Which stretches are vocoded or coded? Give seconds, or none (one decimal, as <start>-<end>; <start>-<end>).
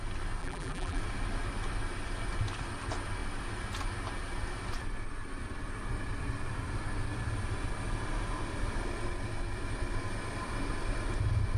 0.4-1.0